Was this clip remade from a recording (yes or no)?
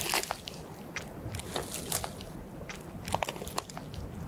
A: no